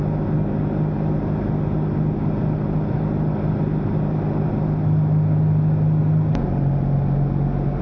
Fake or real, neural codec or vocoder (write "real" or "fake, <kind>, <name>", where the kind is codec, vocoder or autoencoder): real